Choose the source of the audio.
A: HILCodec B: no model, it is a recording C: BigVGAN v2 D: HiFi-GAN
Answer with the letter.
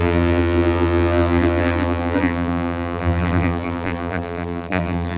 C